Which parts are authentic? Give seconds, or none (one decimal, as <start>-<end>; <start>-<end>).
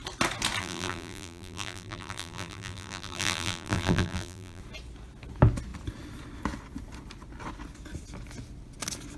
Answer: 0.0-0.6; 4.6-9.2